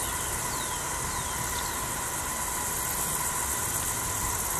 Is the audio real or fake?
real